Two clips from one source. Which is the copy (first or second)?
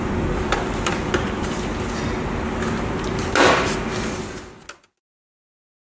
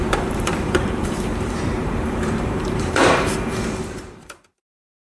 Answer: second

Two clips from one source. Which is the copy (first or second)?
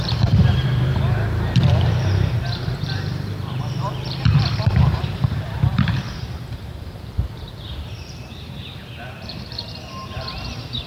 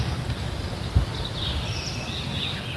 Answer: first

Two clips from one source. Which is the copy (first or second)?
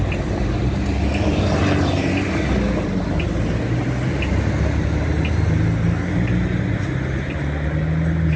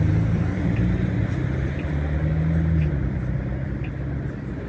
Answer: second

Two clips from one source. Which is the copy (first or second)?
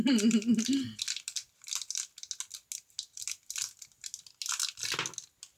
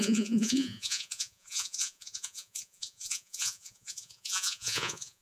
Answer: second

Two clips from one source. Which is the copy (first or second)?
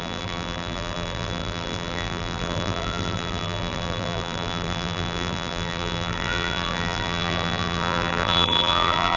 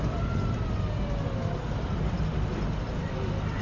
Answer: first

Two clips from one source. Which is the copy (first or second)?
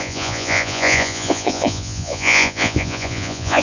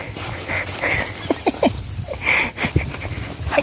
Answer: first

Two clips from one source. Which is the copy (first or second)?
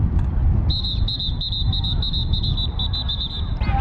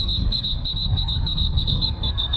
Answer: second